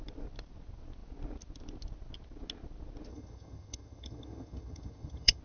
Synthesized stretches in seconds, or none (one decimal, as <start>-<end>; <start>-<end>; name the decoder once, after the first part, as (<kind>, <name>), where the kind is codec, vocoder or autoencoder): 3.1-5.4 (vocoder, HiFi-GAN)